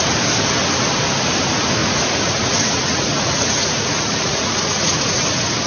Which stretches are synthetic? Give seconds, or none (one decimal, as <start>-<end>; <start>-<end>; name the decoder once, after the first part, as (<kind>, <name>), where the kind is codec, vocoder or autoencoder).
1.8-5.2 (vocoder, Vocos)